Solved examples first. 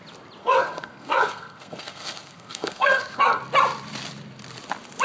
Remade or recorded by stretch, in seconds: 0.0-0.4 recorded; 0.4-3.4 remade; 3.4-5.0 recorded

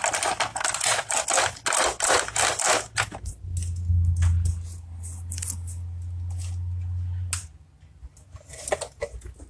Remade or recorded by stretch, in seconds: 0.0-9.5 recorded

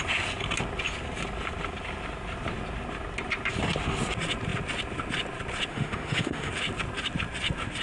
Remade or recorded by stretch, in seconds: 0.0-5.7 recorded; 5.7-6.5 remade; 6.5-7.8 recorded